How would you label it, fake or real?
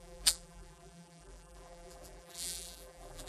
fake